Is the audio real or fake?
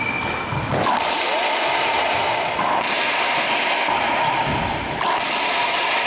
real